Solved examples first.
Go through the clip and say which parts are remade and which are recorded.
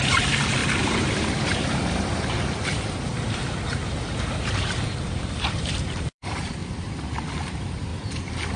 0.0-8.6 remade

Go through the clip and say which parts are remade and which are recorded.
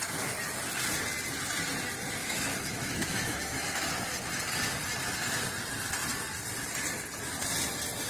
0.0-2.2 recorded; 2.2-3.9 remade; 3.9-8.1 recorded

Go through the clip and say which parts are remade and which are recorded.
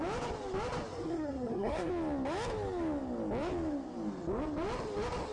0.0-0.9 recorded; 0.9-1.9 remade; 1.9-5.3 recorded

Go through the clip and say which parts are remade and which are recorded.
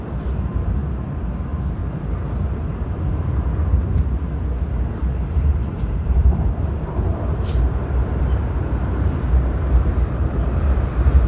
0.0-3.7 remade; 3.7-4.8 recorded; 4.8-11.3 remade